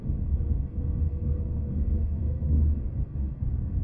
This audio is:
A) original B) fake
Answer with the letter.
B